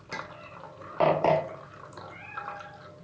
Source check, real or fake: real